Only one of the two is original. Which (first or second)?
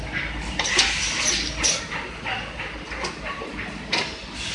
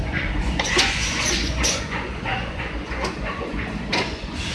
first